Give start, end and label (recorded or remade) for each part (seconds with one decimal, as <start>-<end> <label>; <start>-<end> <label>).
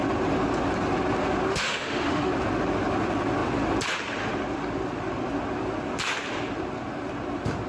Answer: 0.0-1.5 recorded; 1.5-2.3 remade; 2.3-7.7 recorded